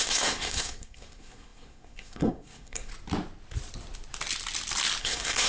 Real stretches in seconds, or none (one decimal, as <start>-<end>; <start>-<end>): 2.9-5.0